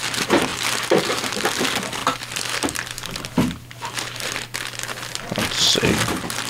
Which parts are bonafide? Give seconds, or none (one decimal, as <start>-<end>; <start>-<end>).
0.0-6.5